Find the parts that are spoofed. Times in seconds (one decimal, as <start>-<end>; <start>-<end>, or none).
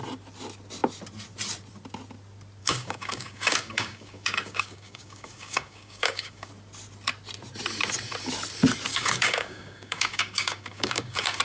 2.6-6.5; 8.9-11.4